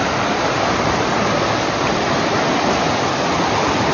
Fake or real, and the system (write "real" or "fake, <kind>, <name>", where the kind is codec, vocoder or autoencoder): fake, vocoder, BigVGAN v2